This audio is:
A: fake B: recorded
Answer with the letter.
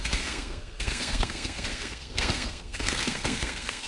A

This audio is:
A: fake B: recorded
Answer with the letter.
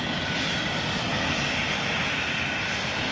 B